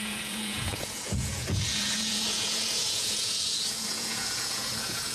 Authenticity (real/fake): fake